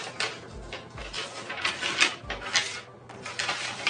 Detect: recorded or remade recorded